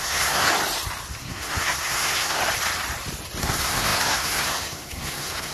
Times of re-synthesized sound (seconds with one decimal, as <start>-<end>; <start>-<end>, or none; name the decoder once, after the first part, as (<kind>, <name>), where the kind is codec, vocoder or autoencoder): 0.0-0.5 (codec, SNAC); 1.2-2.4; 3.4-5.5